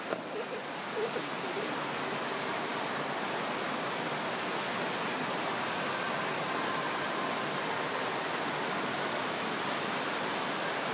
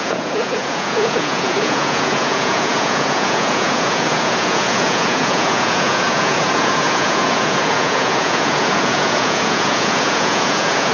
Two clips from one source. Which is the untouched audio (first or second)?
first